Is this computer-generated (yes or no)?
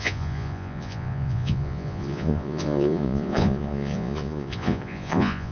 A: yes